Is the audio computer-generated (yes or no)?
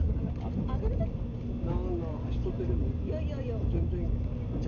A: no